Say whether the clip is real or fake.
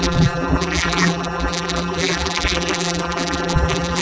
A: fake